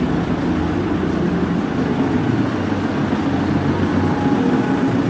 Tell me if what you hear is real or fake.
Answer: real